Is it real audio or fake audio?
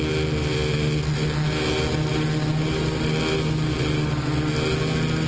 real